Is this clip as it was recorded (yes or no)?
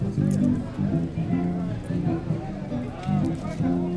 yes